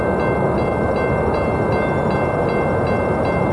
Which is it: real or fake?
real